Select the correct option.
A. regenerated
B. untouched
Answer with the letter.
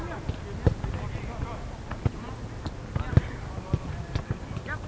B